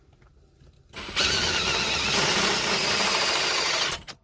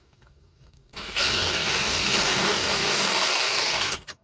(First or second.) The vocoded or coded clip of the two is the second